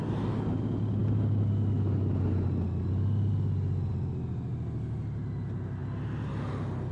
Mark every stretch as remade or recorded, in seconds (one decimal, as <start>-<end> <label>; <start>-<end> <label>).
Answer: 0.0-6.9 recorded